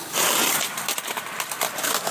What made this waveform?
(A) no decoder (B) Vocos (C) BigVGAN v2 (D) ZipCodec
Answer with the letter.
C